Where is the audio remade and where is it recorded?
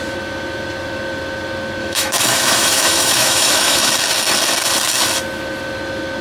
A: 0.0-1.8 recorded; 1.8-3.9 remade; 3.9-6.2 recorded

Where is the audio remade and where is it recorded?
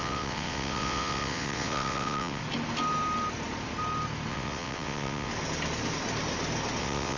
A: 0.0-2.4 remade; 2.4-4.3 recorded; 4.3-5.3 remade; 5.3-6.8 recorded; 6.8-7.2 remade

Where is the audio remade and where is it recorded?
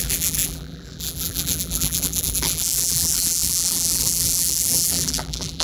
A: 0.0-5.6 remade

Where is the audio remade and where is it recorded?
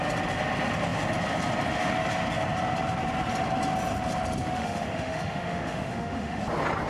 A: 0.0-4.4 recorded; 4.4-6.4 remade; 6.4-6.9 recorded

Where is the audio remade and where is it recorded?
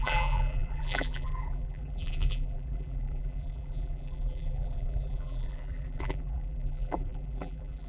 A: 0.0-7.9 remade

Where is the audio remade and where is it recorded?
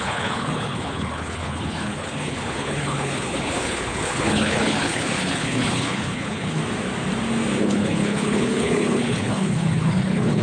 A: 0.0-6.6 remade; 6.6-7.6 recorded; 7.6-10.4 remade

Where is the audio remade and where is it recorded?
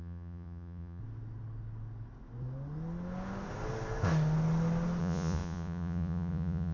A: 0.0-1.0 remade; 1.0-5.0 recorded; 5.0-6.7 remade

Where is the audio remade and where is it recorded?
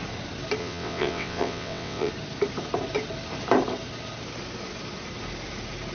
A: 0.0-0.6 recorded; 0.6-2.1 remade; 2.1-5.9 recorded